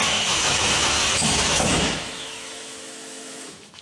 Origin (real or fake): fake